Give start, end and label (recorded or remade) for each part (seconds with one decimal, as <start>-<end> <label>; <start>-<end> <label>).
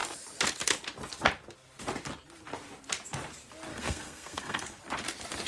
0.0-3.7 recorded; 3.7-4.8 remade; 4.8-5.5 recorded